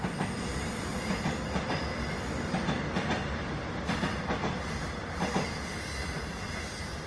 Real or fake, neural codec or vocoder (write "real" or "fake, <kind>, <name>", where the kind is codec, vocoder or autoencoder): real